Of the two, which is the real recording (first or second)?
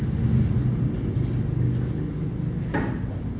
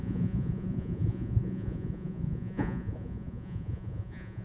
first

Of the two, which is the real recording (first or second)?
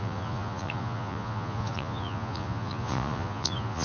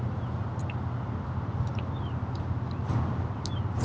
second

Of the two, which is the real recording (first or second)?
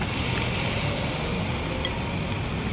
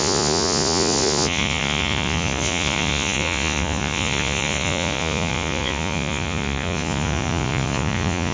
first